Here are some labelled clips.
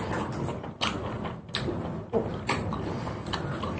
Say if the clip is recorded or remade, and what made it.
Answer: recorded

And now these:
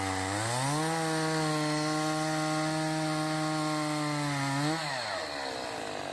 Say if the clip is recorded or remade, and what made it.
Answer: recorded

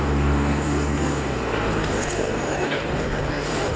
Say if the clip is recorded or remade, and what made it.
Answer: remade, codec, DAC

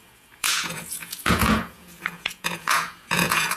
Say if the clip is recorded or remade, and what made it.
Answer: remade, vocoder, Vocos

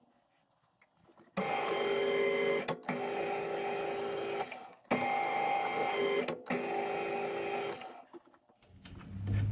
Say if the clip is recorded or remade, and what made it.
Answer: recorded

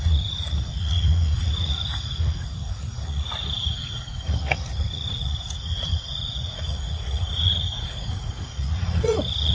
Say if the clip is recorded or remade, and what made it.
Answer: remade, vocoder, Vocos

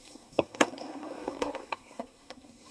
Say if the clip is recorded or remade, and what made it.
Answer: remade, codec, SNAC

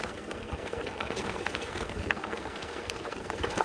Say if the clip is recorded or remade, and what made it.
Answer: remade, codec, SNAC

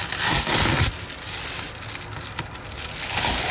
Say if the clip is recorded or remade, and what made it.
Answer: recorded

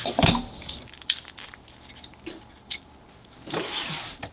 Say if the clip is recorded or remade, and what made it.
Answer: recorded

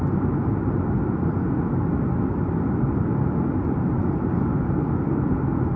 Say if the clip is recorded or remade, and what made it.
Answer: recorded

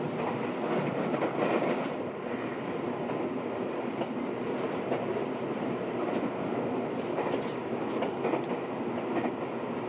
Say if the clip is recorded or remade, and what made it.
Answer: recorded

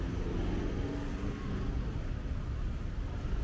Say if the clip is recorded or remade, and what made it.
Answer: recorded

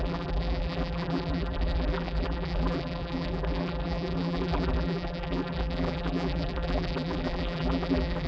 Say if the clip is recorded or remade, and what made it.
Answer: remade, vocoder, BigVGAN v2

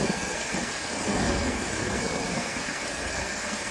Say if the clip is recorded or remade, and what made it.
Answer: remade, codec, SNAC